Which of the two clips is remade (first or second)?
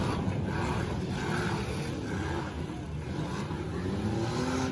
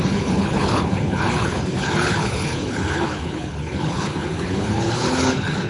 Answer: second